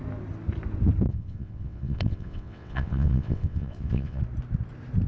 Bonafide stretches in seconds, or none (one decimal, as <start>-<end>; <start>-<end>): 0.0-1.1; 4.2-5.1